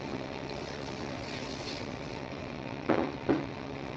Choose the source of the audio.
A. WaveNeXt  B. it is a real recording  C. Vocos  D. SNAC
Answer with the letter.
A